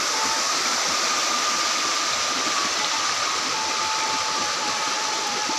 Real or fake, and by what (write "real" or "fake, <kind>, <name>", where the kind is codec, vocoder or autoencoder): real